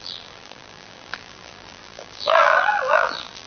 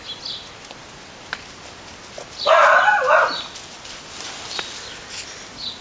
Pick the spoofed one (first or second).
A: first